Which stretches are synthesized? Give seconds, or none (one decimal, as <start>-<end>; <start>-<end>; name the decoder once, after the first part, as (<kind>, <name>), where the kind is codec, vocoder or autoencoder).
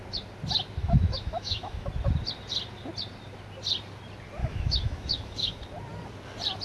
0.8-1.9 (autoencoder, DAC-VAE); 4.4-5.6